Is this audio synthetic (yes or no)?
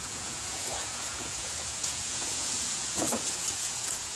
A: yes